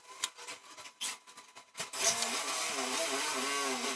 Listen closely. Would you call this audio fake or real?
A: real